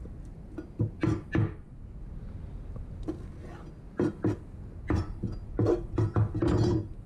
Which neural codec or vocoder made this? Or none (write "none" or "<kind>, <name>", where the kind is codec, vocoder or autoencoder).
none